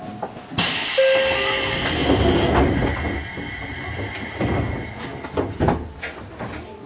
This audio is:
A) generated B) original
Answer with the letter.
B